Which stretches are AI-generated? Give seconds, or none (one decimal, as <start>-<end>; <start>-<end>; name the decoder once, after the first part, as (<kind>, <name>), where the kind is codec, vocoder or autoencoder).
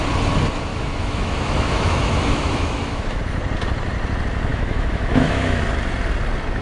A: 0.7-3.2 (autoencoder, DAC-VAE); 4.5-5.6